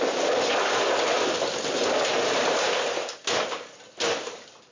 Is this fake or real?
real